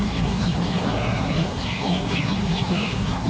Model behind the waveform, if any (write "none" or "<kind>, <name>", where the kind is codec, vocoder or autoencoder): codec, SNAC